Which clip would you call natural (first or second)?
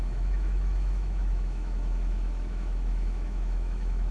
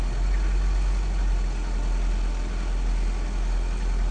second